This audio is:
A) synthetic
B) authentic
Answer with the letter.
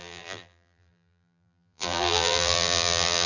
A